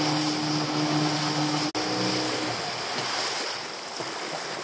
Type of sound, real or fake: real